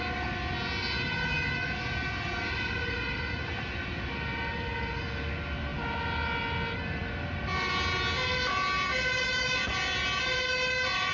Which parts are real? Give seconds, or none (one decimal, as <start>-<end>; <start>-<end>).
0.0-11.1